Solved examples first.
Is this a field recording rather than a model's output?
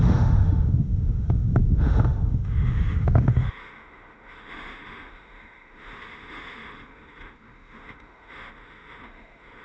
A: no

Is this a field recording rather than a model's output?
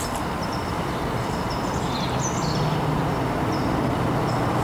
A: yes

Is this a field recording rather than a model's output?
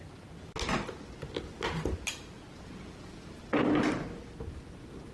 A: yes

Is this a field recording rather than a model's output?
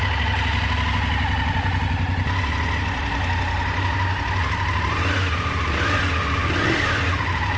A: yes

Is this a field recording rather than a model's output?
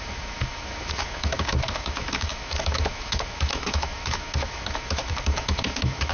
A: no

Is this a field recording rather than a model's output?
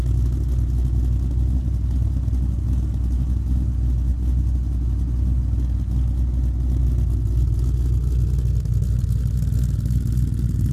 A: yes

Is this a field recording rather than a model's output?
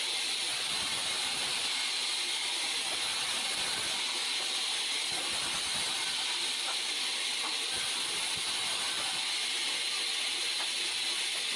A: yes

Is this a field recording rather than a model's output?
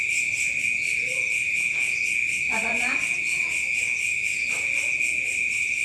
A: yes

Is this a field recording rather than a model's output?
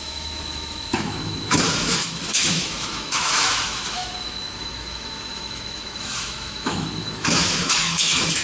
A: no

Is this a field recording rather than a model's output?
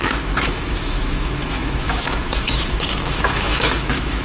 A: no